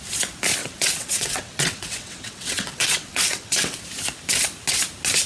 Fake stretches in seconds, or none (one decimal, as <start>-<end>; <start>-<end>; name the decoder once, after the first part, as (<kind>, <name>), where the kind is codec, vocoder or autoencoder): 0.6-3.8 (vocoder, WaveNeXt)